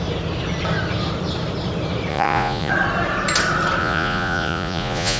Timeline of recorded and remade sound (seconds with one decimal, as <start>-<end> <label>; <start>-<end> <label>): 0.0-2.1 recorded; 2.1-2.7 remade; 2.7-3.8 recorded; 3.8-5.2 remade